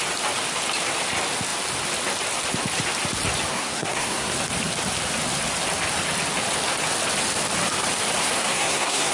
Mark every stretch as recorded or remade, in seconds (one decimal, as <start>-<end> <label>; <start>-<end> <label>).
0.0-3.5 recorded; 3.5-4.3 remade; 4.3-8.2 recorded; 8.2-9.1 remade